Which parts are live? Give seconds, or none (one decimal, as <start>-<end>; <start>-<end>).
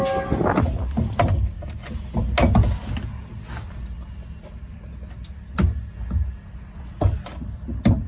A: 0.0-8.1